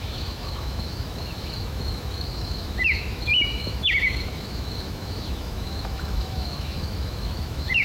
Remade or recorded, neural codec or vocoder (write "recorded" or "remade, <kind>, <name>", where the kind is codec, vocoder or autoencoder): remade, autoencoder, DAC-VAE